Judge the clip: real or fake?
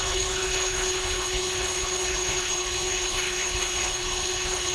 fake